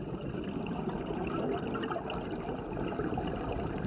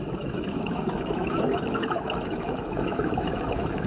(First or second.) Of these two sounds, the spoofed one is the second